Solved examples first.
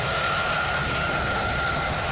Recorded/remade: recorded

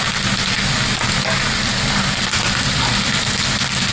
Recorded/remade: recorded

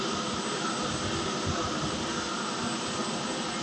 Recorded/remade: recorded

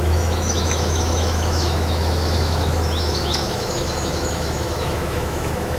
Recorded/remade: remade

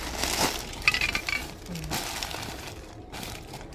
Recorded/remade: recorded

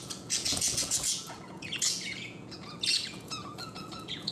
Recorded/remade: remade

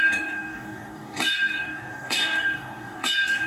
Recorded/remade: remade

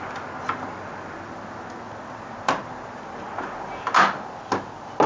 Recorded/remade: recorded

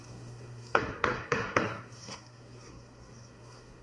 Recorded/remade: remade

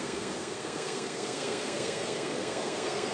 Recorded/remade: remade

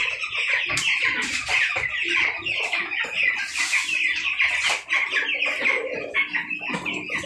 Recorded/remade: remade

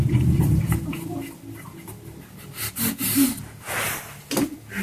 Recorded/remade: recorded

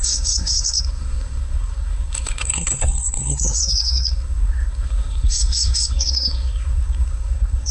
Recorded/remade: remade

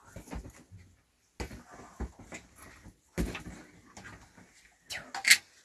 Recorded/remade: recorded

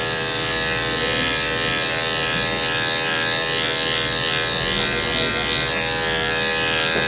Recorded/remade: recorded